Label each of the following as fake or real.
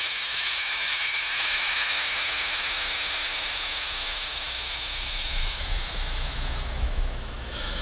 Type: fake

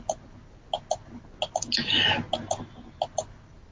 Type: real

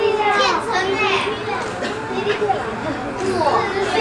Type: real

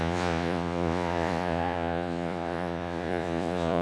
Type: fake